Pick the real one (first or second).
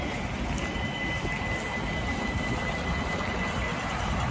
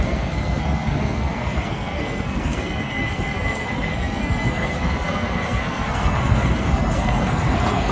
first